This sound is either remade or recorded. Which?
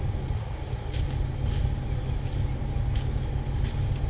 recorded